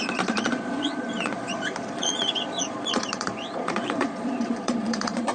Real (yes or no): no